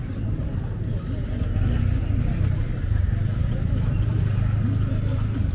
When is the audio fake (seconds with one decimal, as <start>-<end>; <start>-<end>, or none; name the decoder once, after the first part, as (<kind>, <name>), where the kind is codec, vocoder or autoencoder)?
0.0-0.8 (vocoder, BigVGAN v2); 3.4-4.2